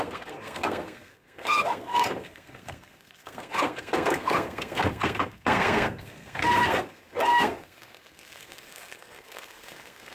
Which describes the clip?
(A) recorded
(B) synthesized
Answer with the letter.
B